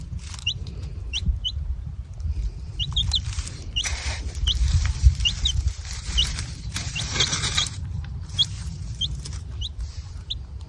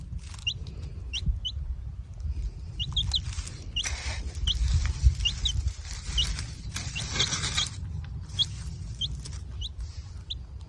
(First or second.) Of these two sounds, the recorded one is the second